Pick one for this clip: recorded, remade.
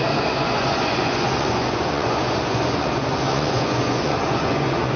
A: remade